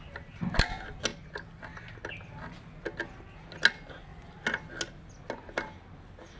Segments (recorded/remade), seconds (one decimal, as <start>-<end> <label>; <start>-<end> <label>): 0.0-6.4 recorded